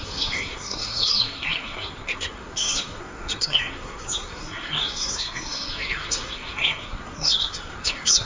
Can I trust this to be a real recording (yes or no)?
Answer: no